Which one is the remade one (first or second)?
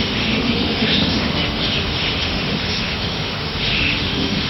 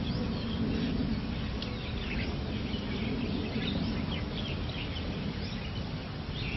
first